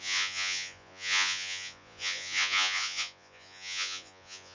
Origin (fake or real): fake